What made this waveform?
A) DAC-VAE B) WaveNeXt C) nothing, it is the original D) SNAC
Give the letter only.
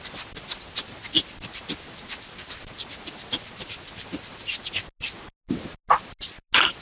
C